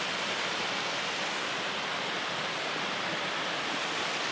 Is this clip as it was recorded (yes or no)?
yes